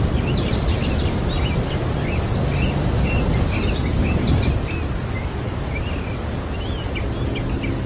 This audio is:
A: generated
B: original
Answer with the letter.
B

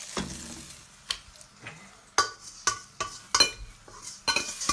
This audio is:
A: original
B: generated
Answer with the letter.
A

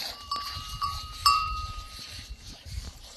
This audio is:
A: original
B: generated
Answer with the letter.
B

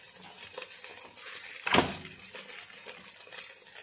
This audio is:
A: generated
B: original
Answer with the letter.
B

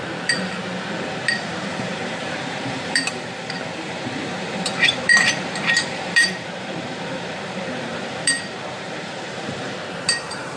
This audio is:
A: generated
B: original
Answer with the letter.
A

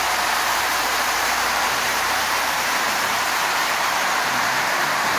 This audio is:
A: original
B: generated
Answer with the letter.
B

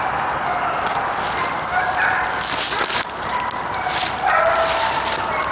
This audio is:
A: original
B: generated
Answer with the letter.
A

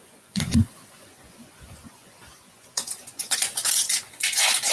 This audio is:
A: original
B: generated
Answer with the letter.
B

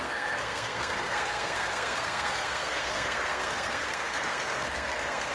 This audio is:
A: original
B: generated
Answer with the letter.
B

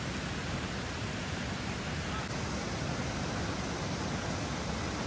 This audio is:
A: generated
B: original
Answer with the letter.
B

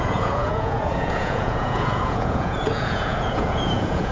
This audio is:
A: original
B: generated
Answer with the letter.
B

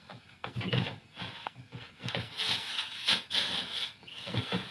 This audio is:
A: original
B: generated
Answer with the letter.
B